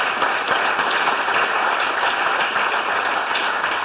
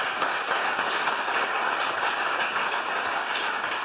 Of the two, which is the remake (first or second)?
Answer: second